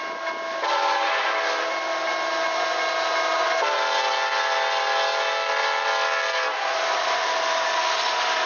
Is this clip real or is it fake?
real